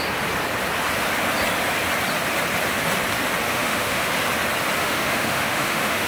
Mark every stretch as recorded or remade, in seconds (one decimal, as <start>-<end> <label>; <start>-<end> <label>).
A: 0.0-3.5 recorded; 3.5-4.1 remade; 4.1-4.8 recorded; 4.8-6.1 remade